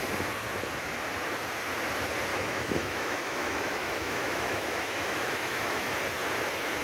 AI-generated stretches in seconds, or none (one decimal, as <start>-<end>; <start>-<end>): 2.3-6.0